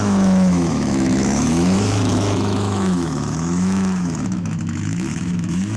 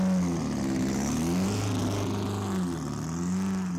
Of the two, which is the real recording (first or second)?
second